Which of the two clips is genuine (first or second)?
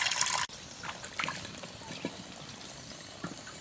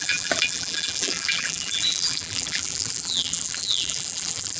first